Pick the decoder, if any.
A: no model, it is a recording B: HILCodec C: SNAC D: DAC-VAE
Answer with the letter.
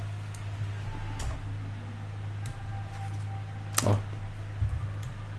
A